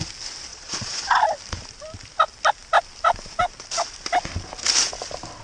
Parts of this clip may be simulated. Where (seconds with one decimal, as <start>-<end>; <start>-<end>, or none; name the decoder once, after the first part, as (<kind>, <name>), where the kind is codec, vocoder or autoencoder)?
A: 0.5-1.2 (vocoder, Vocos)